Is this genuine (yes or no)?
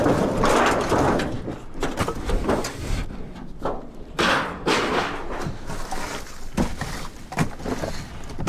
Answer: yes